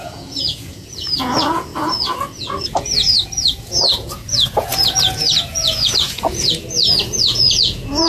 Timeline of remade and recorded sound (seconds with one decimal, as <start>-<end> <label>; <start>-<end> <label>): 0.0-8.1 remade